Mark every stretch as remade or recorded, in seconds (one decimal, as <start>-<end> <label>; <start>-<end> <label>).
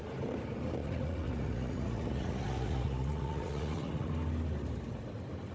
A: 0.0-0.8 recorded; 0.8-4.1 remade; 4.1-5.5 recorded